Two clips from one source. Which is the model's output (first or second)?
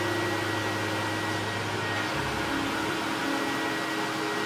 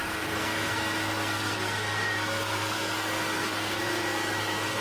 second